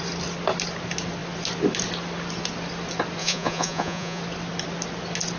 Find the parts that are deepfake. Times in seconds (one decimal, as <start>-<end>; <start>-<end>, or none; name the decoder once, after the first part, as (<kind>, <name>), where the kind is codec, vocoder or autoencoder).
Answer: 3.2-4.2 (vocoder, Vocos)